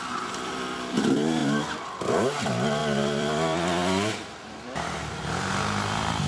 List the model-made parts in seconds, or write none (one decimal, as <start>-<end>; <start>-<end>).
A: 1.4-2.0; 2.8-5.5